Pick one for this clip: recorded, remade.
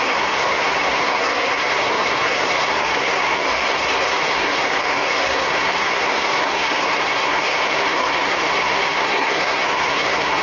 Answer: remade